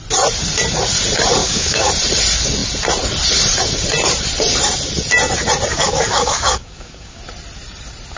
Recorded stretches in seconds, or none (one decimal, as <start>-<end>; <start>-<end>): 0.0-1.4; 1.9-5.7; 7.2-8.2